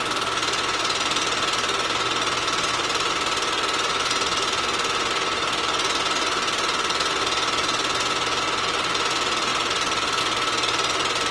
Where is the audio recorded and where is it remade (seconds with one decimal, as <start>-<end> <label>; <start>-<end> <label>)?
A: 0.0-11.3 recorded